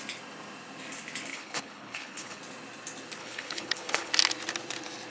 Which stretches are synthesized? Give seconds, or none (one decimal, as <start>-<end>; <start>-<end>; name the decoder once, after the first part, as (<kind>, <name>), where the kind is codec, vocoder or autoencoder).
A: 1.3-2.4 (codec, HILCodec); 3.2-4.1